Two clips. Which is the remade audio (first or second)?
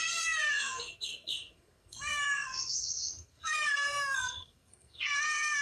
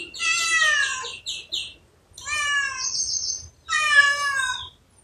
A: first